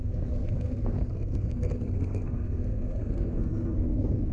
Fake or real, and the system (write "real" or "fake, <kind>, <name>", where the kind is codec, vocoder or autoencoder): fake, codec, SNAC